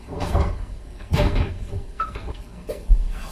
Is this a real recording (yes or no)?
no